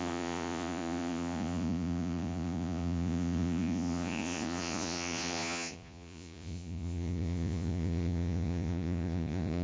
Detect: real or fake fake